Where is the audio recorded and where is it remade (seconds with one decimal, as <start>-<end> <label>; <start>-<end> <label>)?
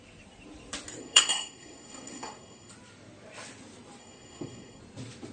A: 0.0-1.0 recorded; 1.0-2.7 remade; 2.7-4.0 recorded; 4.0-4.8 remade; 4.8-5.3 recorded